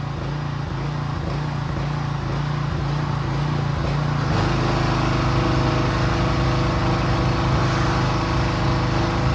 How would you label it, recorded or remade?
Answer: recorded